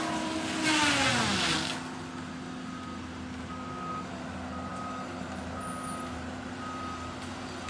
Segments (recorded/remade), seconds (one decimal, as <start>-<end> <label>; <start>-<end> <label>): 0.0-7.7 recorded

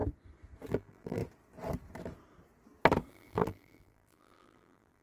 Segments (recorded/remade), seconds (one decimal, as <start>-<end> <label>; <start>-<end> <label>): 0.0-0.7 recorded; 0.7-1.2 remade; 1.2-3.1 recorded; 3.1-5.0 remade